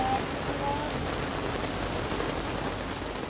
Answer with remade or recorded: remade